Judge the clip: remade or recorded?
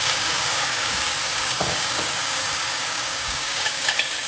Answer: remade